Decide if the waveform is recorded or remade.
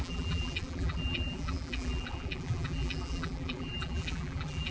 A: remade